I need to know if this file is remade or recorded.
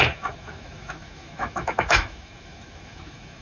remade